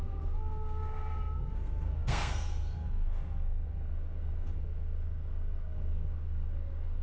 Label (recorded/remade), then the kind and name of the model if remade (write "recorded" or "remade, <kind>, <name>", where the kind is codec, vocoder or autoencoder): remade, codec, SNAC